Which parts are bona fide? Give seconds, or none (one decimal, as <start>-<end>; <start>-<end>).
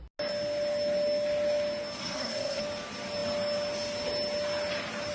0.0-2.0; 2.6-5.1